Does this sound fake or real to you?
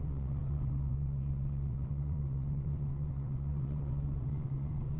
fake